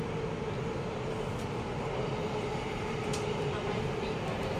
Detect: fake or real real